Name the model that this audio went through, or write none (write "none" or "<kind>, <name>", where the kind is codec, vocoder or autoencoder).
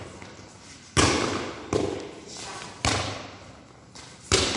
none